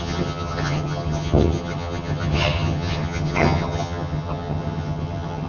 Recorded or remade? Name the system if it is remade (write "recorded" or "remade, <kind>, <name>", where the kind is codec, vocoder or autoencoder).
remade, vocoder, HiFi-GAN